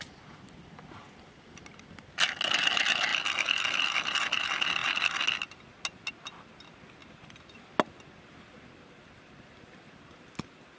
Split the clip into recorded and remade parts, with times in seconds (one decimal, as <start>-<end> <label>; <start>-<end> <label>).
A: 0.0-10.8 recorded

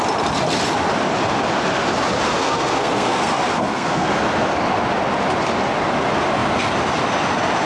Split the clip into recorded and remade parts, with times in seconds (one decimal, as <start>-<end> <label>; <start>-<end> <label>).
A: 0.0-2.4 recorded; 2.4-4.1 remade; 4.1-7.7 recorded

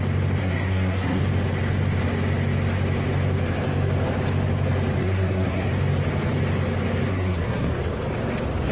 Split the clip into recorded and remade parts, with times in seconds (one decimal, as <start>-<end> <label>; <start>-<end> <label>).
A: 0.0-0.4 recorded; 0.4-1.2 remade; 1.2-5.0 recorded; 5.0-5.7 remade; 5.7-7.1 recorded; 7.1-7.7 remade; 7.7-8.7 recorded

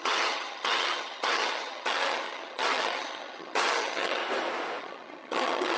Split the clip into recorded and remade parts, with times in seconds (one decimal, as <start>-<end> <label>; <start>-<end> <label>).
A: 0.0-4.2 remade; 4.2-4.8 recorded; 4.8-5.8 remade

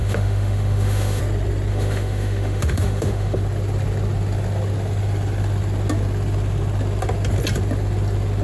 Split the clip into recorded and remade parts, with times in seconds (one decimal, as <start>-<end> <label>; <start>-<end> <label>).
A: 0.0-1.2 remade; 1.2-1.7 recorded; 1.7-3.4 remade; 3.4-8.4 recorded

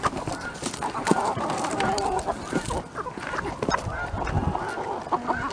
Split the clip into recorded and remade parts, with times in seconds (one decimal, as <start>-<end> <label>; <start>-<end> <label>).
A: 0.0-5.5 recorded

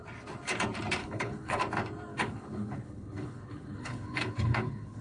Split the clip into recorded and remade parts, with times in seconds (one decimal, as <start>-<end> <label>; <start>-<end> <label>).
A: 0.0-1.0 recorded; 1.0-1.6 remade; 1.6-2.1 recorded; 2.1-5.0 remade

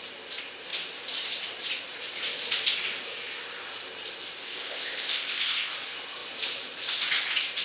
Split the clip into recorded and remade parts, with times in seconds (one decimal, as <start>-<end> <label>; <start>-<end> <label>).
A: 0.0-4.4 recorded; 4.4-5.7 remade; 5.7-7.6 recorded